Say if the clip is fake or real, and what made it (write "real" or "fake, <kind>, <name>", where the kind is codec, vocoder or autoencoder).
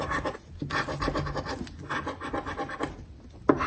real